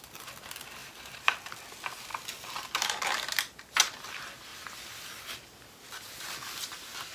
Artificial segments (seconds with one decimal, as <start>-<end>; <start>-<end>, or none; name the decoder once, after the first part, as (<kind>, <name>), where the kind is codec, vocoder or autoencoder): 0.8-1.7 (vocoder, BigVGAN v2); 4.5-5.2